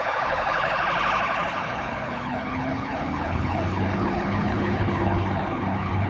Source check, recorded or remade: remade